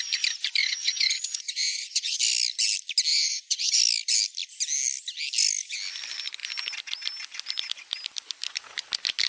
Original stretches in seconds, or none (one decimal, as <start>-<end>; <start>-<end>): 0.0-0.6; 2.2-3.1; 3.8-9.3